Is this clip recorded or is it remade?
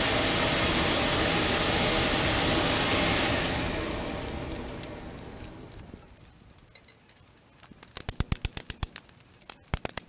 recorded